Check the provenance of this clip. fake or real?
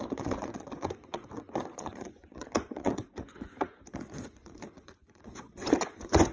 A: fake